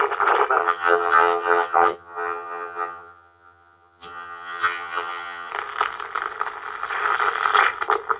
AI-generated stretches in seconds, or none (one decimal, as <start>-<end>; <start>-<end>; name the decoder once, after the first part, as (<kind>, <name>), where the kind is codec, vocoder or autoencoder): 0.6-5.5 (vocoder, HiFi-GAN)